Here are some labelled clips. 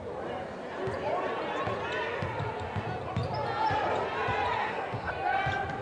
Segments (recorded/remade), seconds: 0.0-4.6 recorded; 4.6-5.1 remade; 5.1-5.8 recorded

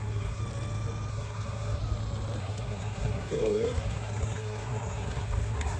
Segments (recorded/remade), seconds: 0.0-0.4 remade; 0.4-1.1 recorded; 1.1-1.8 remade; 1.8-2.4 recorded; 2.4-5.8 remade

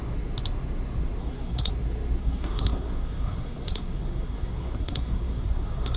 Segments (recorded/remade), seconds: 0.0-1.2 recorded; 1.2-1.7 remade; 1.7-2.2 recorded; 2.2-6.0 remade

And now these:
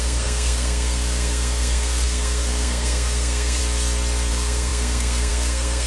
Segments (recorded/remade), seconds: 0.0-3.6 remade; 3.6-4.3 recorded; 4.3-5.9 remade

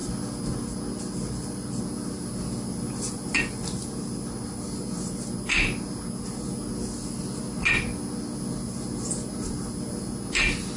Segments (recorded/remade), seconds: 0.0-10.8 recorded

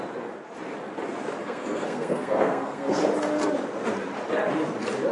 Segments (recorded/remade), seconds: 0.0-1.4 recorded; 1.4-3.0 remade; 3.0-5.1 recorded

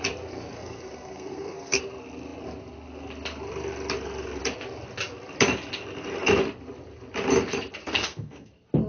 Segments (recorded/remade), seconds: 0.0-0.6 recorded; 0.6-1.8 remade; 1.8-7.8 recorded; 7.8-8.5 remade; 8.5-8.9 recorded